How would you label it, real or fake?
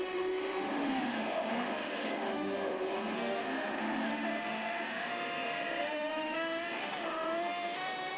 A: fake